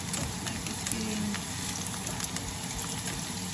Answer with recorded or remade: recorded